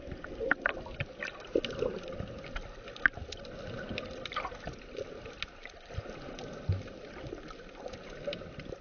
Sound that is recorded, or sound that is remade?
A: recorded